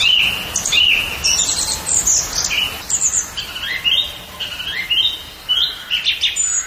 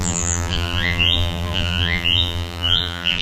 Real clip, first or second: first